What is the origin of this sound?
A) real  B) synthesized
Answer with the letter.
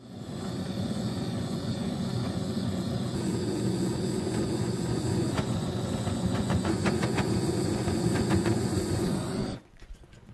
B